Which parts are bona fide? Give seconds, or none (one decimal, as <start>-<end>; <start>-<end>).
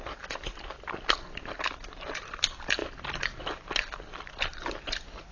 0.0-5.3